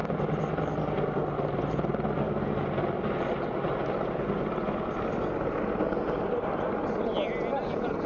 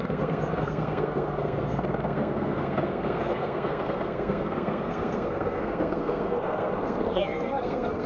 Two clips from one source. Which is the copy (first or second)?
second